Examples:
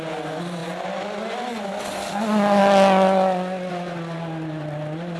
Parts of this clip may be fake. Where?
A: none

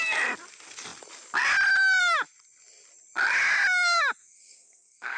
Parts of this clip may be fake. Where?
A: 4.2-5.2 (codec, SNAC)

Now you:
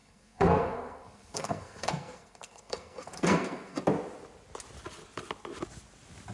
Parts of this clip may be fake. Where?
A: 0.0-3.8 (codec, SNAC)

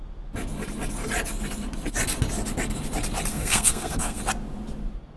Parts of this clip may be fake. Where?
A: 3.3-4.2 (codec, SNAC)

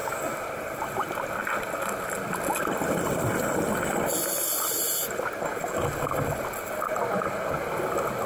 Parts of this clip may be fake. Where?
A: none

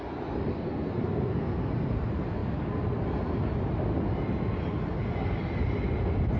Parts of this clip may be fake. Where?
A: 0.5-1.7 (codec, SNAC)

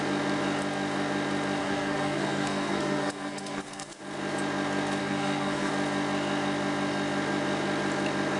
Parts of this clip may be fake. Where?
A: 1.6-4.0 (codec, SNAC); 5.0-5.7

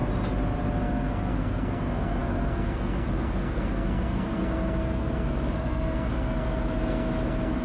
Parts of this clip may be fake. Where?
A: 0.8-7.6 (codec, SNAC)